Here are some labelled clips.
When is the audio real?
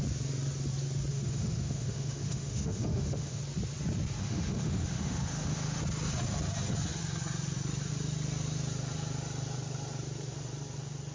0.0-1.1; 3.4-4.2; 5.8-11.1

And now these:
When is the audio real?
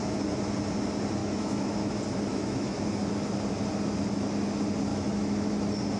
0.0-1.2; 1.9-2.3; 2.8-4.9; 5.5-6.0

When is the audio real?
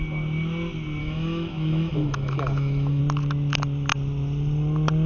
0.0-1.0; 3.0-5.1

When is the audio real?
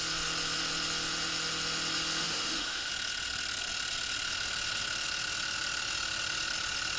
0.0-2.2; 2.9-7.0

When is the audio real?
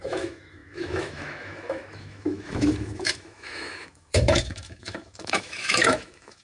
none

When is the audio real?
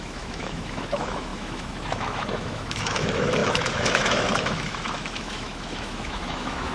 none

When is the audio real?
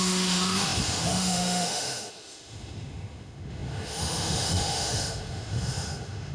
none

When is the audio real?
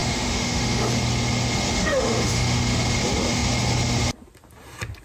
0.9-1.7; 3.0-5.0